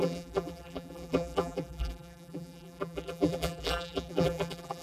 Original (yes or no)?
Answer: no